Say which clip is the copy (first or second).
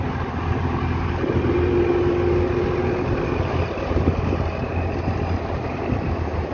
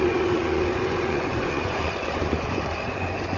second